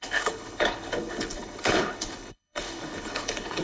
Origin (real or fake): fake